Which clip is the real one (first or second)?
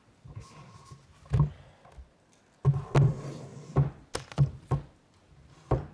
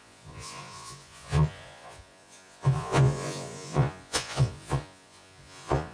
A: first